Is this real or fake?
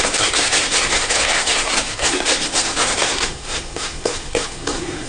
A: fake